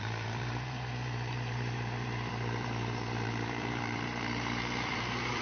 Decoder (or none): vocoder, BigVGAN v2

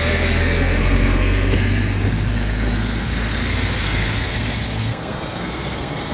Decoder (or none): codec, SNAC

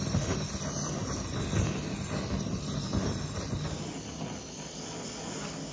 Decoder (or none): none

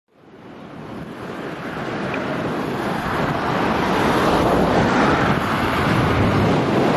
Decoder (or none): none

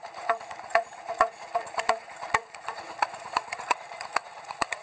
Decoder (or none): vocoder, Vocos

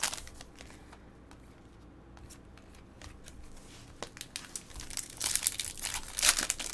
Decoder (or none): none